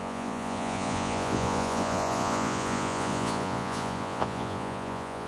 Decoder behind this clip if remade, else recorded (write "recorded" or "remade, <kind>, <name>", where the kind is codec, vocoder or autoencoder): remade, vocoder, Vocos